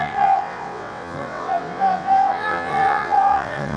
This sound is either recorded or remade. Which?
remade